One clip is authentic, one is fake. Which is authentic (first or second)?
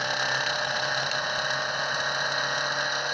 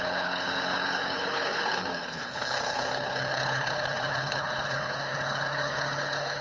first